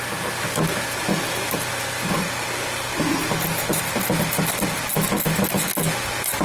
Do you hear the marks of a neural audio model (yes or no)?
no